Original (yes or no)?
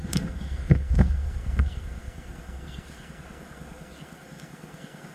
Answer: no